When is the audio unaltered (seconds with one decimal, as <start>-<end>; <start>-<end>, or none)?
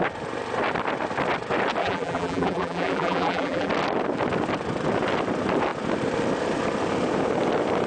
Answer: 0.0-1.8; 3.7-7.9